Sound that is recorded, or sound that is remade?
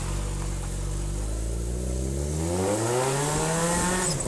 recorded